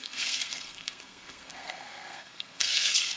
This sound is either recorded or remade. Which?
remade